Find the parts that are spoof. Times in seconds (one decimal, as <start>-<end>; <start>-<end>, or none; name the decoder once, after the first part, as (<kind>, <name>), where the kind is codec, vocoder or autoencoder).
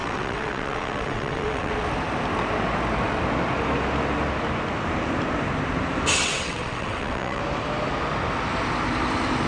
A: 0.0-1.7 (vocoder, WaveNeXt); 6.2-7.4